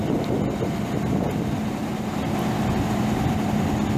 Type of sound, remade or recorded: recorded